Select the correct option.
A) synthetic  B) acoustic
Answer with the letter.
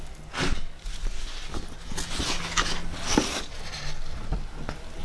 B